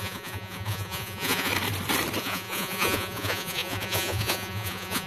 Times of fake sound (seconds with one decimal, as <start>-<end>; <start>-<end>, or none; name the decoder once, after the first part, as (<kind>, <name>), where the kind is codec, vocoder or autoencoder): 0.0-1.5 (vocoder, Vocos); 2.2-5.1